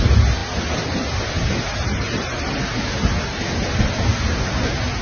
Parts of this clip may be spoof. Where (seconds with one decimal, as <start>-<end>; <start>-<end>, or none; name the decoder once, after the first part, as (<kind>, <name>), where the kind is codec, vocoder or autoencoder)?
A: none